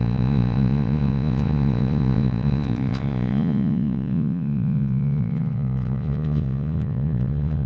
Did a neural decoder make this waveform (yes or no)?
yes